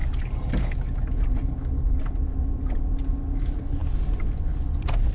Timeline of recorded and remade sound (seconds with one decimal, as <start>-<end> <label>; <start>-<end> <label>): 0.0-5.1 recorded